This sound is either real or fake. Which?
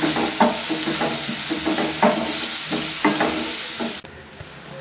real